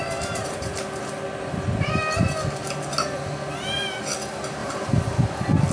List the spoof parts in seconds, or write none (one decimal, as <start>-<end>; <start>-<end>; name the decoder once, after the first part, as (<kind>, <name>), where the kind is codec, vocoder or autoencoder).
0.0-1.0 (vocoder, BigVGAN v2); 4.6-5.2